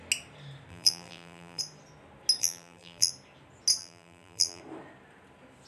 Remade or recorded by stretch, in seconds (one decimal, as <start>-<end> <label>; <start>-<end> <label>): 0.0-0.7 recorded; 0.7-1.6 remade; 1.6-2.4 recorded; 2.4-3.1 remade; 3.1-3.8 recorded; 3.8-4.6 remade; 4.6-5.7 recorded

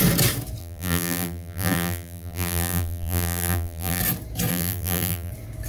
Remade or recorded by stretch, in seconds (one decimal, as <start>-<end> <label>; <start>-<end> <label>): 0.0-0.6 recorded; 0.6-4.0 remade; 4.0-4.5 recorded; 4.5-5.3 remade; 5.3-5.7 recorded

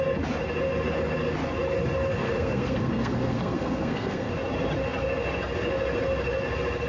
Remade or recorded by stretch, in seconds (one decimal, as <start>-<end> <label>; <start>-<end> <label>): 0.0-2.2 recorded; 2.2-4.3 remade; 4.3-6.9 recorded

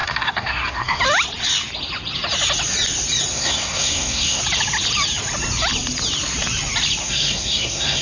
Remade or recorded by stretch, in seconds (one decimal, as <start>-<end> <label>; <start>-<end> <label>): 0.0-1.0 remade; 1.0-3.3 recorded; 3.3-4.4 remade; 4.4-7.0 recorded; 7.0-8.0 remade

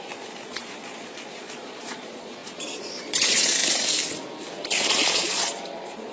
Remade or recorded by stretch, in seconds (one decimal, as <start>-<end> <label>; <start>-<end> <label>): 0.0-3.6 remade; 3.6-5.1 recorded; 5.1-6.1 remade